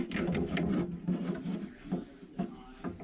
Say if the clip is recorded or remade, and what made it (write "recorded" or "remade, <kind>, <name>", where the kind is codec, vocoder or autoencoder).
recorded